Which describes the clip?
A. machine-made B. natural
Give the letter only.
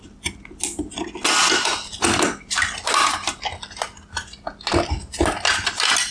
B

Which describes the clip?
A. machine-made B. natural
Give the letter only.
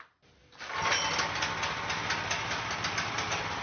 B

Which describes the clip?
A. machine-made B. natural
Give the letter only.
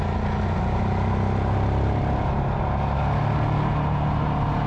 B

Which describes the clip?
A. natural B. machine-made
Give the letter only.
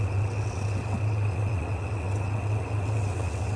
B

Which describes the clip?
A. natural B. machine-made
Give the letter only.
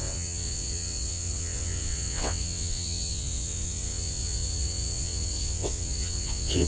B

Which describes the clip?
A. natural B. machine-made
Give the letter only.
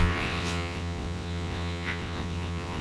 B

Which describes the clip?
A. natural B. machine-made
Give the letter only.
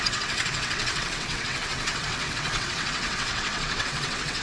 B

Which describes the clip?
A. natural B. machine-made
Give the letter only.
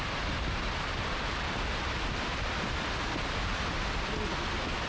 A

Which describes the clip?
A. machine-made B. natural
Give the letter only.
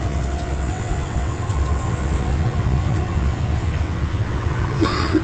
A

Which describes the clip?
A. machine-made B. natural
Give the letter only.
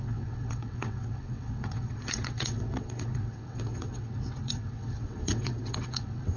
A